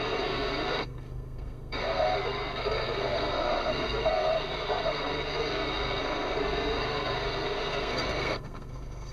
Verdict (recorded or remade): remade